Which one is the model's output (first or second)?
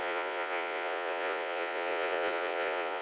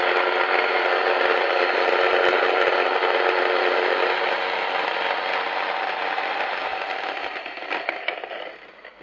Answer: first